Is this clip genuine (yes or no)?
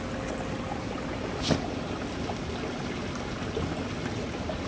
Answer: yes